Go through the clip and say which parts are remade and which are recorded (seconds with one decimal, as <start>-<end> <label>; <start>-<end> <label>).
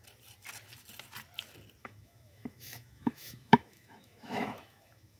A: 0.0-1.8 recorded; 1.8-5.2 remade